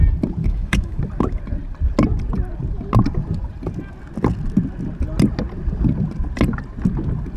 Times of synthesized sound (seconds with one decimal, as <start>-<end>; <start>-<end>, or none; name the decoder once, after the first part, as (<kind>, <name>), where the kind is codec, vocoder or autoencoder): 0.4-1.0 (autoencoder, DAC-VAE)